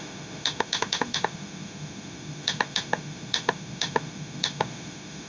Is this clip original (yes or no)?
no